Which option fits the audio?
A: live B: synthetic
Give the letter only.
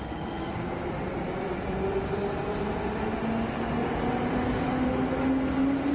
A